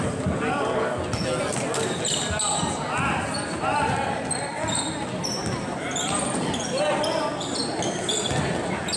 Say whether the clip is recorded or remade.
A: recorded